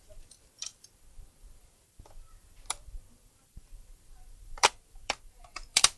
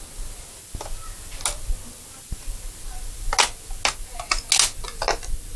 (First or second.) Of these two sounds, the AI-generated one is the first